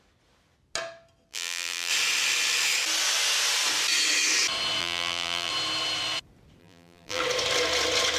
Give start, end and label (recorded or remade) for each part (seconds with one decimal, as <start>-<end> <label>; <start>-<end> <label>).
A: 0.0-1.3 recorded; 1.3-1.9 remade; 1.9-4.8 recorded; 4.8-5.5 remade; 5.5-6.6 recorded; 6.6-7.2 remade; 7.2-8.2 recorded